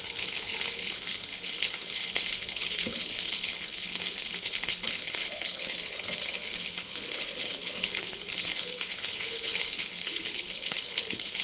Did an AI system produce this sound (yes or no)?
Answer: yes